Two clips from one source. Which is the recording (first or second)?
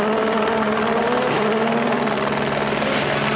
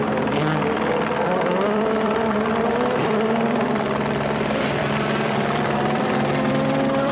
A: first